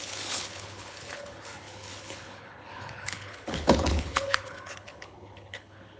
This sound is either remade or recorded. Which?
remade